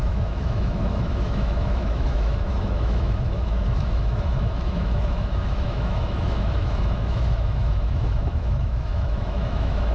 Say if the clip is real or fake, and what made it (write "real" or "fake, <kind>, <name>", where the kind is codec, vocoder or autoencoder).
fake, autoencoder, DAC-VAE